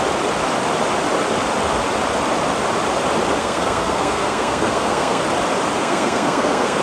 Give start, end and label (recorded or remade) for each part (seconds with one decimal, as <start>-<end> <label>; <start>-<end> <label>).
0.0-3.4 recorded; 3.4-5.2 remade; 5.2-5.8 recorded; 5.8-6.8 remade